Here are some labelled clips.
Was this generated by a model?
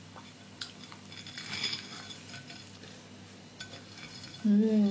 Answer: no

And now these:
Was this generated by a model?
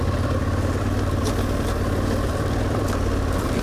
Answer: yes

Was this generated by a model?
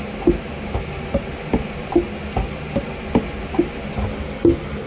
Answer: no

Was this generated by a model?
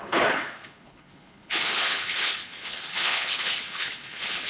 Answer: yes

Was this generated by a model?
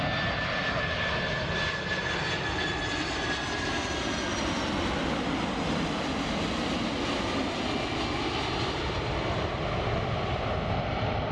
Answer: no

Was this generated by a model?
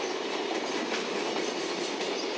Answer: no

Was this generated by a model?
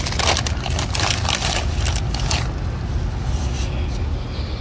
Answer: no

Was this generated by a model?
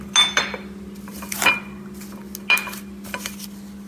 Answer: no